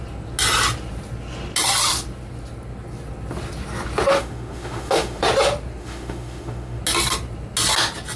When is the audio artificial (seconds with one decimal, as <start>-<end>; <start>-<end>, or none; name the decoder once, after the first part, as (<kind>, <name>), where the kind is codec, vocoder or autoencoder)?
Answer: 4.1-5.2 (autoencoder, DAC-VAE); 5.8-6.8